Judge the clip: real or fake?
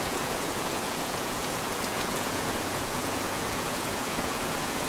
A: fake